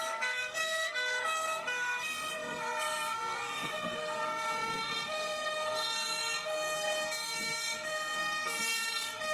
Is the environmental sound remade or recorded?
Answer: remade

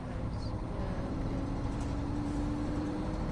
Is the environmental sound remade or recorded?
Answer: remade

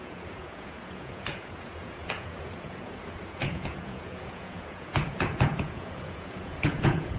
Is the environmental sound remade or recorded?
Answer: remade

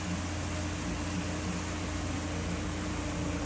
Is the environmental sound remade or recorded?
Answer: recorded